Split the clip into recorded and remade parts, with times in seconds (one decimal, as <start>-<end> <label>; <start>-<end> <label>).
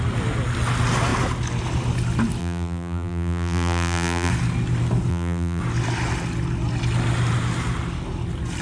0.0-2.4 recorded; 2.4-4.3 remade; 4.3-5.1 recorded; 5.1-5.6 remade; 5.6-8.6 recorded